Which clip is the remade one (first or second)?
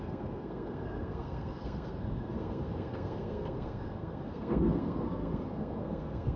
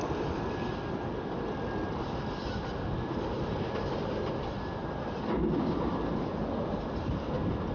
first